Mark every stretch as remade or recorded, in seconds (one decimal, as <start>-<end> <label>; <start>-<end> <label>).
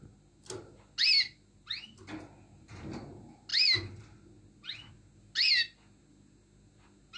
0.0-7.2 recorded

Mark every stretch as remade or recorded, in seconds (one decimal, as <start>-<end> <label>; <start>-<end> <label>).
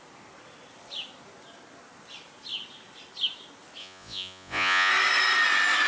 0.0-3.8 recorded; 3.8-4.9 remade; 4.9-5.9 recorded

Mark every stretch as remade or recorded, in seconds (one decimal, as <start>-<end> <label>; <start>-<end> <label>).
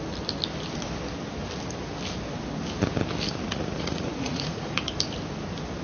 0.0-3.4 recorded; 3.4-4.9 remade; 4.9-5.8 recorded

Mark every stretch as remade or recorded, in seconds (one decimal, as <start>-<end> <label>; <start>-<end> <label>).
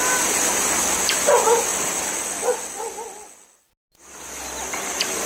0.0-5.3 recorded